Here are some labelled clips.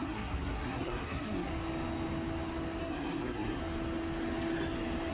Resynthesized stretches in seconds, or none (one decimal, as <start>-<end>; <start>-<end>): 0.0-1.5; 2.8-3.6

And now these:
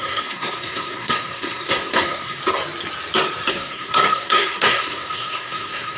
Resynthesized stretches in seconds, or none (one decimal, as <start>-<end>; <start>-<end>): 0.0-2.4; 3.5-6.0

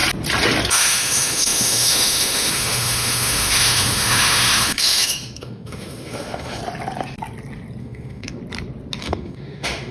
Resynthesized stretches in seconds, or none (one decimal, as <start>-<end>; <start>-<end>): 0.7-6.6; 7.8-8.4; 9.0-9.9

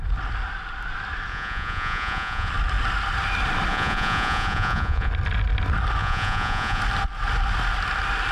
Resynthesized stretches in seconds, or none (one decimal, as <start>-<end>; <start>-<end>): 1.3-2.5; 3.7-5.1; 6.0-6.8

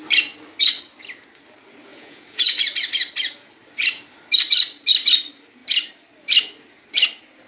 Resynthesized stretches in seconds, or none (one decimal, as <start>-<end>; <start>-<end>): 1.9-2.9